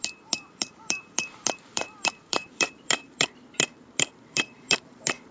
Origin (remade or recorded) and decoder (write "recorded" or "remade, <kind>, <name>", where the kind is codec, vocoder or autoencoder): remade, vocoder, BigVGAN v2